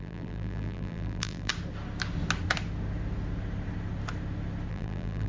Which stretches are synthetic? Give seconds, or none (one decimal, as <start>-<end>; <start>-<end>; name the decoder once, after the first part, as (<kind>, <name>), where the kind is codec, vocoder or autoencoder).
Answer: 0.0-1.5 (vocoder, BigVGAN v2); 4.7-5.3